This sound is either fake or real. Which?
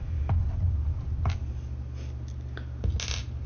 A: real